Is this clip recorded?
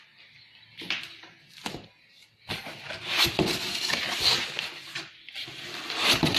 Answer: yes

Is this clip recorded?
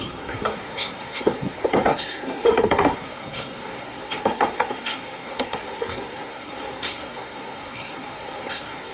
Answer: no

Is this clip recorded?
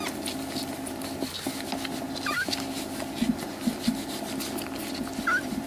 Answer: yes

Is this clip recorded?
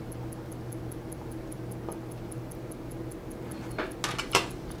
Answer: yes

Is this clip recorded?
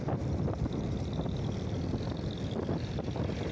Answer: yes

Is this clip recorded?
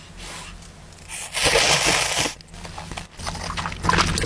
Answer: yes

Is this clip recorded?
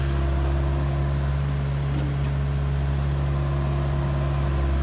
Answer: yes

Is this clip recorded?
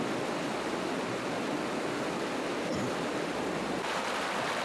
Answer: yes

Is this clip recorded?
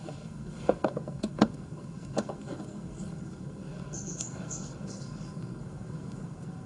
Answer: no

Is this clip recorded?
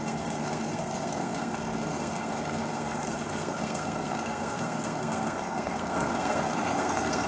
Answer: no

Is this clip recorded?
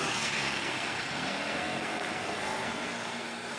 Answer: no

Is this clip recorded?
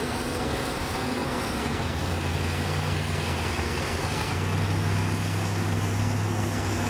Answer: no